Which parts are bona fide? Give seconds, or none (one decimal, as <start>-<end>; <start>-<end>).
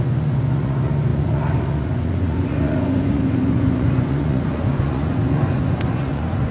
none